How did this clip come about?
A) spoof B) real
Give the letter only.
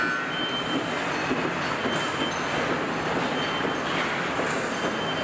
B